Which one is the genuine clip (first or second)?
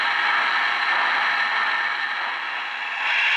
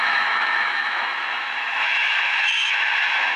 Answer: first